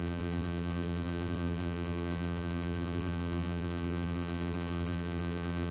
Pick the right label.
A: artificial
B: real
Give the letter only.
A